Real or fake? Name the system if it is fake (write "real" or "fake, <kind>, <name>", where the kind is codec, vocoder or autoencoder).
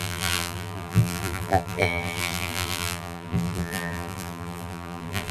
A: fake, vocoder, BigVGAN v2